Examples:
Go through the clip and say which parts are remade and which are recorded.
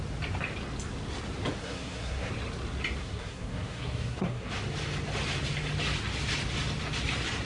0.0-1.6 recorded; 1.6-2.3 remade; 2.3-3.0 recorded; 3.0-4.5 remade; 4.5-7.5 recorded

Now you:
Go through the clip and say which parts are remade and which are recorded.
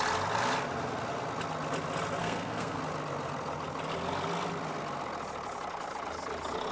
0.0-2.2 recorded; 2.2-2.8 remade; 2.8-6.7 recorded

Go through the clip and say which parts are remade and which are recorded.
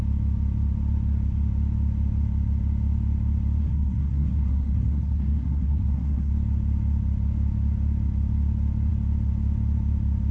0.0-3.6 recorded; 3.6-6.3 remade; 6.3-10.3 recorded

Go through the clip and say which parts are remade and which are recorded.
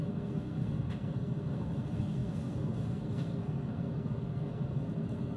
0.0-5.4 remade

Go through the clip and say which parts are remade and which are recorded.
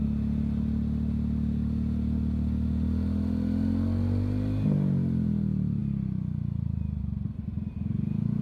0.0-8.4 recorded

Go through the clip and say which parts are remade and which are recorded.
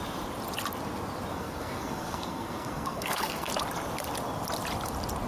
0.0-1.3 recorded; 1.3-3.5 remade; 3.5-5.3 recorded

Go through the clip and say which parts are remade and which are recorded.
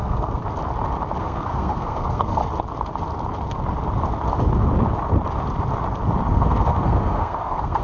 0.0-0.4 remade; 0.4-1.2 recorded; 1.2-2.4 remade; 2.4-6.3 recorded; 6.3-7.8 remade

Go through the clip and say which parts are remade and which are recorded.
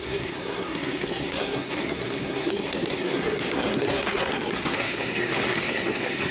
0.0-6.3 remade